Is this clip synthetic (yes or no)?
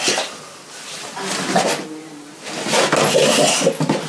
no